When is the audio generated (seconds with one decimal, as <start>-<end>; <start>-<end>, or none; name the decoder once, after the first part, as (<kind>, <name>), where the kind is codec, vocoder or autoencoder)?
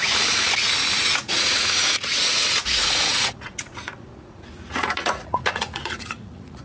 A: 1.0-6.6 (vocoder, Vocos)